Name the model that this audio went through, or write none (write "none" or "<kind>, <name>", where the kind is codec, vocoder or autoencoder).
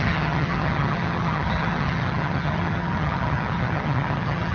vocoder, HiFi-GAN